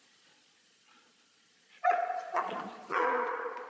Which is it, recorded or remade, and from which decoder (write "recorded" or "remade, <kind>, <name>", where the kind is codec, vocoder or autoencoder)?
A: remade, vocoder, Vocos